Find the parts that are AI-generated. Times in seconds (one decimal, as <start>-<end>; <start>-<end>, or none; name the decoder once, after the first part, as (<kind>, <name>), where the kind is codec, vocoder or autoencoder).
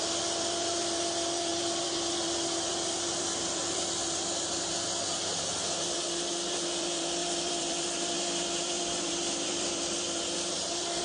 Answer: 0.0-11.0 (vocoder, BigVGAN v2)